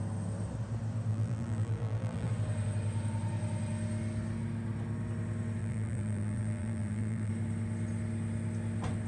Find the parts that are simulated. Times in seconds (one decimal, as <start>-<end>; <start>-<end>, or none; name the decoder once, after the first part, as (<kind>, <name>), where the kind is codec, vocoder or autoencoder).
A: 1.1-2.3 (vocoder, BigVGAN v2); 5.6-7.3